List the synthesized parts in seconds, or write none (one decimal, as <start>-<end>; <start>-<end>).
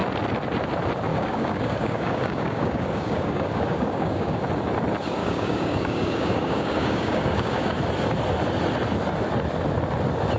1.1-4.4; 5.2-7.8